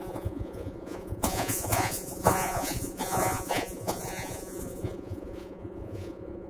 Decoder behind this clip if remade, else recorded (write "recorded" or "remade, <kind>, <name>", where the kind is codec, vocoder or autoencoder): remade, vocoder, Vocos